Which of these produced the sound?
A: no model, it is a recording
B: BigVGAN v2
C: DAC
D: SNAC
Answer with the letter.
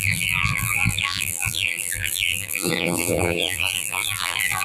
B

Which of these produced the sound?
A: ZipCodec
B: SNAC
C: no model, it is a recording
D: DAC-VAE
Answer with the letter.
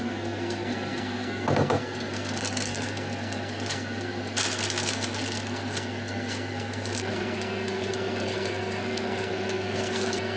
B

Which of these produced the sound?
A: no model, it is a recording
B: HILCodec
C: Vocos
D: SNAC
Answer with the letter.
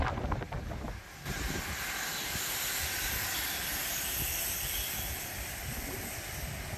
A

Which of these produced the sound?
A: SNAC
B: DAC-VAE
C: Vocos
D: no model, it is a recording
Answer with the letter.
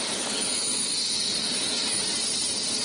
D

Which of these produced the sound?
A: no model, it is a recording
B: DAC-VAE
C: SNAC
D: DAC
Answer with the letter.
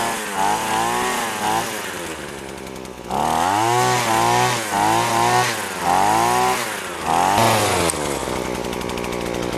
A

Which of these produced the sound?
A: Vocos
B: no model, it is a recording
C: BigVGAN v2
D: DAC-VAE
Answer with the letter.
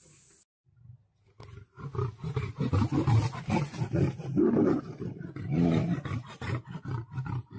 B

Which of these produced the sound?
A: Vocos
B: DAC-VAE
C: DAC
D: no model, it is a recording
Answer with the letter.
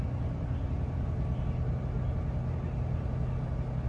D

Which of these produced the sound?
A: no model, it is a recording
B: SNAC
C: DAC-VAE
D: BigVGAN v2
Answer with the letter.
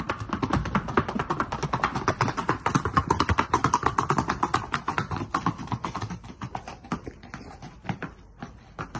A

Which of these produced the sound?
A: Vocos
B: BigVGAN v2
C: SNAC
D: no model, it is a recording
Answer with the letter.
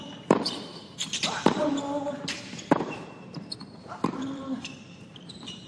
B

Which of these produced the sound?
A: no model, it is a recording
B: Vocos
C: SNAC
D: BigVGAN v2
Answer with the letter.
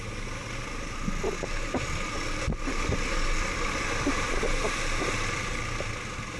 A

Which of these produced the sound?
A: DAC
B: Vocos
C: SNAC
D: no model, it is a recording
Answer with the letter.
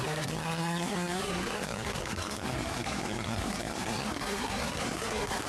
C